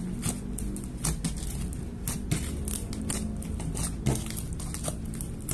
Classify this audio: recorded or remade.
recorded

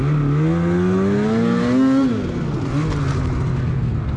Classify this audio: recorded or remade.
recorded